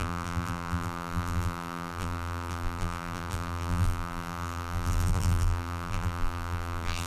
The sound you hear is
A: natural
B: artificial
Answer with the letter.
B